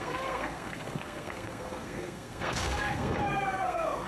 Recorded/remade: remade